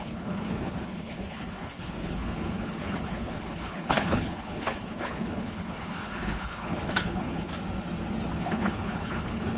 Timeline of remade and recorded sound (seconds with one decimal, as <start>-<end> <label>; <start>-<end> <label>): 0.0-7.5 remade; 7.5-8.4 recorded; 8.4-9.6 remade